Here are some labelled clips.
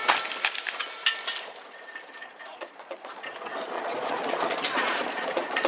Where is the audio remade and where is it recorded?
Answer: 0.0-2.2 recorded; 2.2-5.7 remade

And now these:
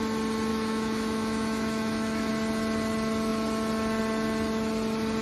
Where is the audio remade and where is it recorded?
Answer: 0.0-0.5 recorded; 0.5-2.3 remade; 2.3-5.2 recorded

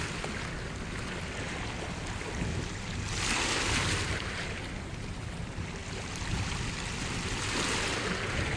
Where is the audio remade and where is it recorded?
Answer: 0.0-8.6 recorded

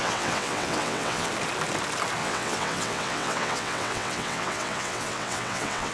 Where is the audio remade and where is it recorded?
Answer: 0.0-1.3 remade; 1.3-2.2 recorded; 2.2-5.9 remade

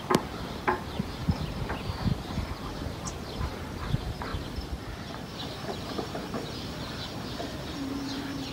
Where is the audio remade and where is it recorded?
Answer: 0.0-1.2 remade; 1.2-2.3 recorded; 2.3-8.5 remade